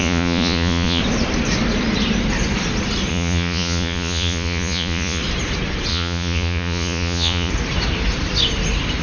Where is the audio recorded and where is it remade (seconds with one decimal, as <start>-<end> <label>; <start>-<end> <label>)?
0.0-1.0 remade; 1.0-3.1 recorded; 3.1-5.2 remade; 5.2-5.9 recorded; 5.9-7.5 remade; 7.5-9.0 recorded